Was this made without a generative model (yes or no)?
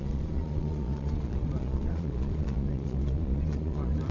no